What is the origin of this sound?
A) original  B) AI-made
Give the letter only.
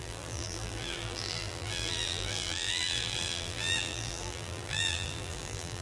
B